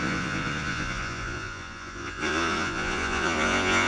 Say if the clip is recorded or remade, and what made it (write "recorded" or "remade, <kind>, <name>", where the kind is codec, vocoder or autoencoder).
remade, vocoder, Vocos